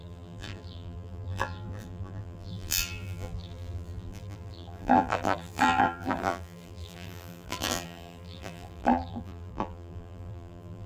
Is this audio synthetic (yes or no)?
yes